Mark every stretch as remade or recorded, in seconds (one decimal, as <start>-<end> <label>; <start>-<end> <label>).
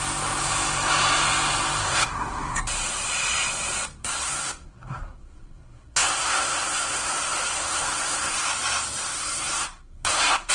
0.0-1.8 recorded; 1.8-2.6 remade; 2.6-4.0 recorded; 4.0-7.1 remade; 7.1-7.5 recorded; 7.5-8.5 remade; 8.5-9.1 recorded; 9.1-10.5 remade